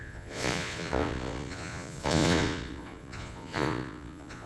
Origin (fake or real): fake